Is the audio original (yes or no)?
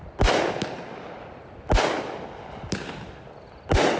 yes